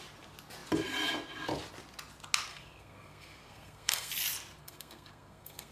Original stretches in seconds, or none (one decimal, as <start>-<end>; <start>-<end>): 0.0-2.5; 4.1-4.6